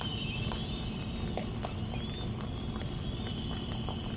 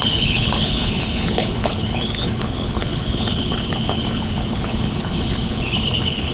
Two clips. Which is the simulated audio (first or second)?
second